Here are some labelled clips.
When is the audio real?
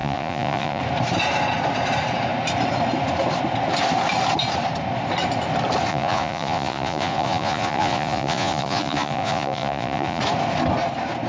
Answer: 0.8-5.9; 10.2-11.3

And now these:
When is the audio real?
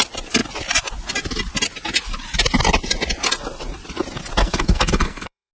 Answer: 0.0-4.4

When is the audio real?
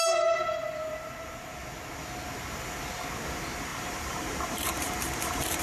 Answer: 1.6-3.1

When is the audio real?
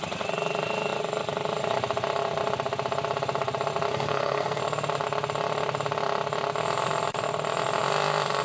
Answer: 0.0-3.9; 4.6-8.4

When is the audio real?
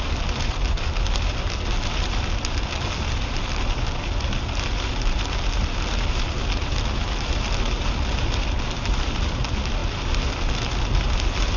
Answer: 0.0-11.6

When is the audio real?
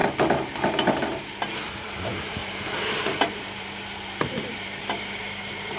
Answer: 0.0-1.5